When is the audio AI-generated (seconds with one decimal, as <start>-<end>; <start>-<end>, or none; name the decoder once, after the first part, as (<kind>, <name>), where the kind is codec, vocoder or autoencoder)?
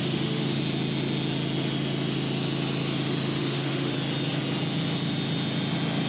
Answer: 0.0-0.6 (autoencoder, DAC-VAE); 3.4-3.9